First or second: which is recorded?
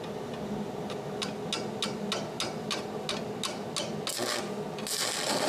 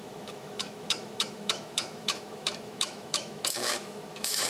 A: first